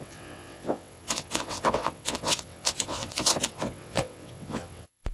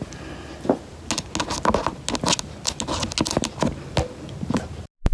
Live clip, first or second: second